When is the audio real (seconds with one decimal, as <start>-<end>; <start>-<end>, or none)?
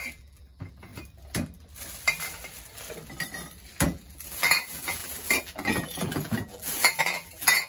0.9-3.8